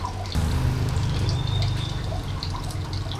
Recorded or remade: recorded